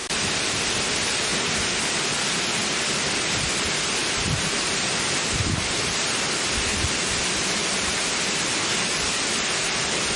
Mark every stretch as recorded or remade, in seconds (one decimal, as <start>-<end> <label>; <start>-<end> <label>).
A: 0.0-4.0 recorded; 4.0-5.2 remade; 5.2-6.7 recorded; 6.7-7.4 remade; 7.4-10.2 recorded